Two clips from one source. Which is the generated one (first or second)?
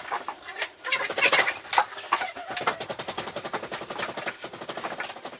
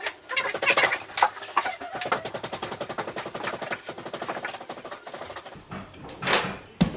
first